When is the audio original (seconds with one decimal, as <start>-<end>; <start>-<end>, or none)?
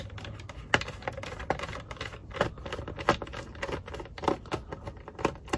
0.0-5.6